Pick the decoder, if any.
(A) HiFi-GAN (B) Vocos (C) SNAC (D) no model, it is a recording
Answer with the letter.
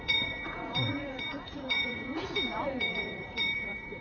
B